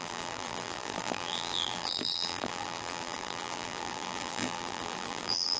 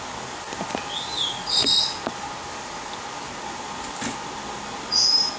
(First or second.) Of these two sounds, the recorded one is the second